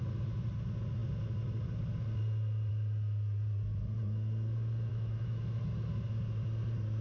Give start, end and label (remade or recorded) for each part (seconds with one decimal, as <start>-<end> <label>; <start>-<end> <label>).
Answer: 0.0-4.9 recorded; 4.9-5.6 remade; 5.6-7.0 recorded